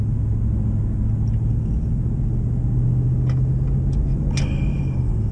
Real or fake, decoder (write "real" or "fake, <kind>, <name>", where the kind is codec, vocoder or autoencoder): real